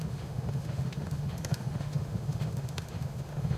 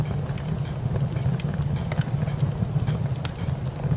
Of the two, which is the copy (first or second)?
first